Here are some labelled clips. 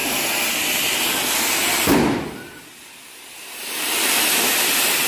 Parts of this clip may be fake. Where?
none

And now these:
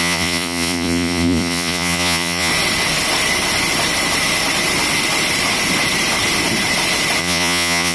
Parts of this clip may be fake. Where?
0.0-2.5 (vocoder, Vocos); 7.2-7.9